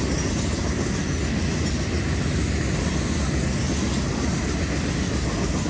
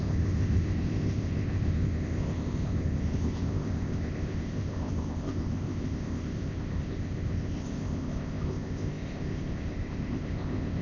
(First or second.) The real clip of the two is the first